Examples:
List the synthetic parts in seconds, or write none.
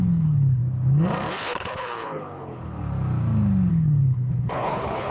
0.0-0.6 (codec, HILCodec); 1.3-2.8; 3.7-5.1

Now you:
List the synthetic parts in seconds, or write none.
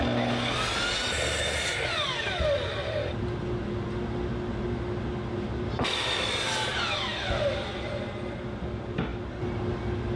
none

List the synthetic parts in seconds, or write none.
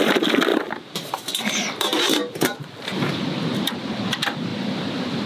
0.5-3.7 (vocoder, BigVGAN v2)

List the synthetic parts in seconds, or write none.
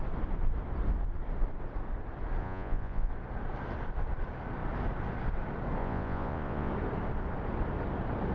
2.4-3.1 (vocoder, Vocos); 5.8-6.7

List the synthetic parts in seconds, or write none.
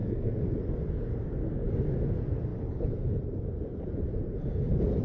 0.0-0.6 (codec, SNAC)